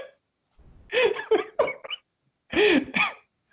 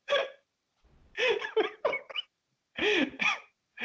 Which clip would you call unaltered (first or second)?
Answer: first